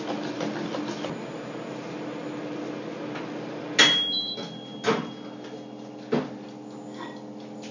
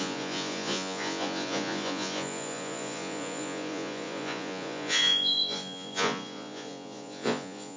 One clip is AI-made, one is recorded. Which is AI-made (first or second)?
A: second